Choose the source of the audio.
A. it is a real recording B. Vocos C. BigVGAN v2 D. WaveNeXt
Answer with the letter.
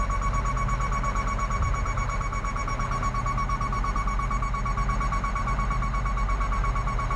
A